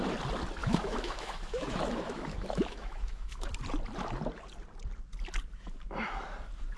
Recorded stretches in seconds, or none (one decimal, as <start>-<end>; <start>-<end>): 0.0-0.6; 3.5-6.8